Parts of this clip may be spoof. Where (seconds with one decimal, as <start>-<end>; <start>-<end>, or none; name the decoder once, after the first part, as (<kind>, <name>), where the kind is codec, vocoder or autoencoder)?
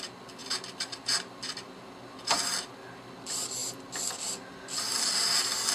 none